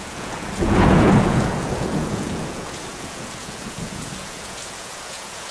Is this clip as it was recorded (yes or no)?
no